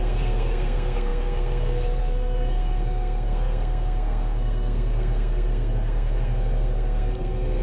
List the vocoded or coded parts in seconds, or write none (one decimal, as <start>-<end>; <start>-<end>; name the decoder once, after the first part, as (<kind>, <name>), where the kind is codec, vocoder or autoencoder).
0.0-7.6 (codec, SNAC)